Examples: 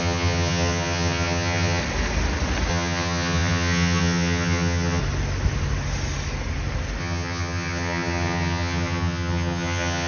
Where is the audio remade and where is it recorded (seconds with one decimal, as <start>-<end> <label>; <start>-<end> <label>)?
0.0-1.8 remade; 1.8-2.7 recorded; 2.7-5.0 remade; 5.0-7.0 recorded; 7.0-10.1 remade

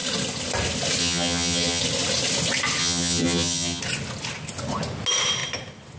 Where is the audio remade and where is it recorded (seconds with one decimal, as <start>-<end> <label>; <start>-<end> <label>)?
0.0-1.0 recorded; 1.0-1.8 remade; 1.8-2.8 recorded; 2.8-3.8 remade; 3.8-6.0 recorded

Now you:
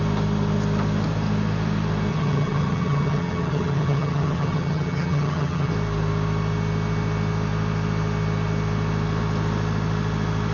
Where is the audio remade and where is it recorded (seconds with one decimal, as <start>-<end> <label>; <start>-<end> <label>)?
0.0-2.1 recorded; 2.1-5.7 remade; 5.7-10.5 recorded

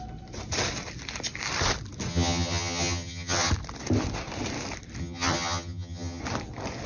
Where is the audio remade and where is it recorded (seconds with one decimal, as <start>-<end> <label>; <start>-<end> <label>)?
0.0-2.1 recorded; 2.1-3.5 remade; 3.5-5.0 recorded; 5.0-6.2 remade; 6.2-6.9 recorded

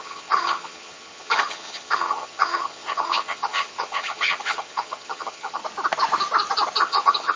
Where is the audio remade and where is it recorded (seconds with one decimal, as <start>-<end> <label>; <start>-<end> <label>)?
0.0-5.6 remade; 5.6-6.8 recorded; 6.8-7.4 remade